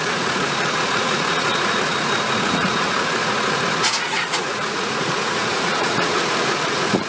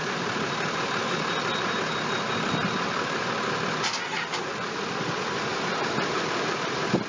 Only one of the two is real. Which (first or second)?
second